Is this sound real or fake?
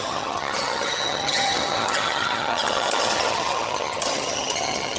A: fake